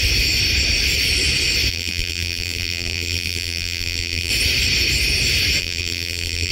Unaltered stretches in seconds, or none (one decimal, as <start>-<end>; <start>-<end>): 0.0-1.7; 4.3-5.6